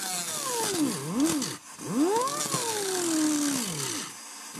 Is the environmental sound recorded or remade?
recorded